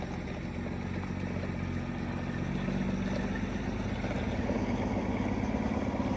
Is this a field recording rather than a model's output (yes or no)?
yes